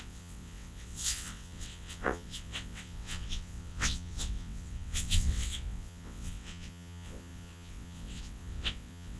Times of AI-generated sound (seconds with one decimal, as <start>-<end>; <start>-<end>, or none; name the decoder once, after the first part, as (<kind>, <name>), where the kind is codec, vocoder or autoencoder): 0.0-9.2 (vocoder, WaveNeXt)